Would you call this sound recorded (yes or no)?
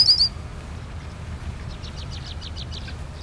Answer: yes